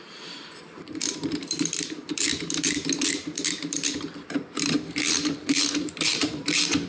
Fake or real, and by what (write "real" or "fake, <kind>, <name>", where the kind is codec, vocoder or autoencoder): fake, vocoder, BigVGAN v2